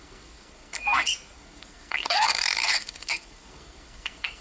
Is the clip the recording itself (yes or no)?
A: no